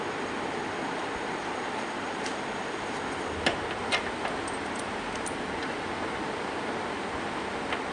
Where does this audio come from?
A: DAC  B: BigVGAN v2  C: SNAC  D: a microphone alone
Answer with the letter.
D